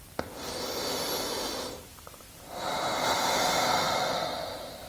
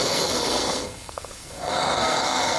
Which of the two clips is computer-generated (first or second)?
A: second